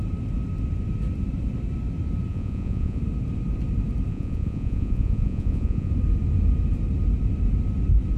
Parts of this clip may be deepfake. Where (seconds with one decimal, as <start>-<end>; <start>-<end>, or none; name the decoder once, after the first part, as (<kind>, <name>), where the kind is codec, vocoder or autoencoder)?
2.3-3.0 (vocoder, Vocos); 4.1-5.9